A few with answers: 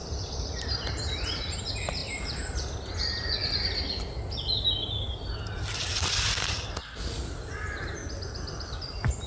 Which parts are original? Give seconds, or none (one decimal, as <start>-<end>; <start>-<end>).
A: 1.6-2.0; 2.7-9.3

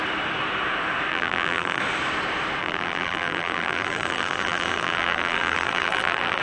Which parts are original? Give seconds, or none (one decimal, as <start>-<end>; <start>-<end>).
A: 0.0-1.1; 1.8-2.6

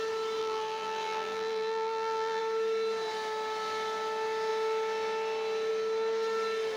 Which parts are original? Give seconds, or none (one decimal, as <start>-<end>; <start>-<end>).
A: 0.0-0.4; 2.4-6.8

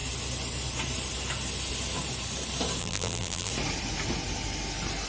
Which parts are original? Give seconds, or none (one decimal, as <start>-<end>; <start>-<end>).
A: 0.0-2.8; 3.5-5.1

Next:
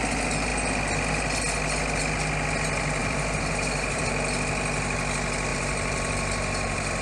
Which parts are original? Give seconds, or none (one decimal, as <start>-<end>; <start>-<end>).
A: 0.0-3.0; 4.0-5.5

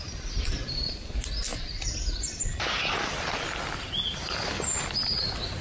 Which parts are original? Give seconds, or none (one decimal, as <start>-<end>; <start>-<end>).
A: 0.0-5.6